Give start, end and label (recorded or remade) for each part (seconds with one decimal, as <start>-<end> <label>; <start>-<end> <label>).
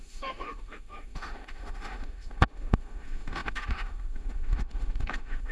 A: 0.0-5.5 remade